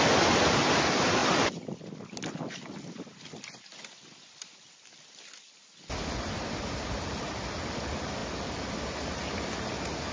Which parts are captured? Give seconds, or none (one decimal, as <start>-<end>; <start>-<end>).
1.2-2.5

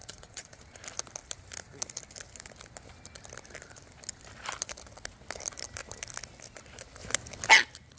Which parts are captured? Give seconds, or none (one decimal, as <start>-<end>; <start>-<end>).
0.6-8.0